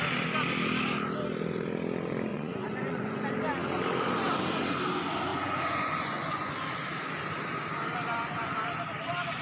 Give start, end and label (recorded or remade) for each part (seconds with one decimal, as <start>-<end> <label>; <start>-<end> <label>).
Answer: 0.0-2.3 recorded; 2.3-3.2 remade; 3.2-5.3 recorded; 5.3-6.5 remade; 6.5-9.4 recorded